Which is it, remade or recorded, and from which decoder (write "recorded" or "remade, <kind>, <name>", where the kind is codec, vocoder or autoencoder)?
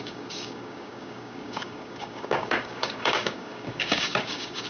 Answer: remade, codec, DAC